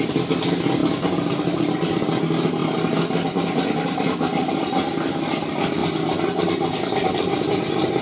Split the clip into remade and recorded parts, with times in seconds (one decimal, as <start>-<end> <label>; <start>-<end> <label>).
0.0-0.8 recorded; 0.8-2.0 remade; 2.0-2.6 recorded; 2.6-4.5 remade; 4.5-5.8 recorded; 5.8-8.0 remade